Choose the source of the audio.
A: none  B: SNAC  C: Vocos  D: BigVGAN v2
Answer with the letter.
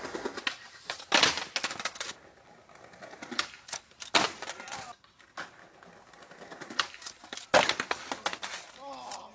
A